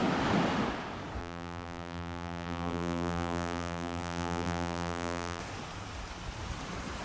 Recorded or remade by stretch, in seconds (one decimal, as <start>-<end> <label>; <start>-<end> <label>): 0.0-1.2 recorded; 1.2-5.4 remade; 5.4-7.0 recorded